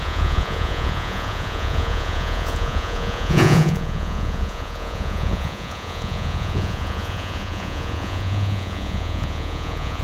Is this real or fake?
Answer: fake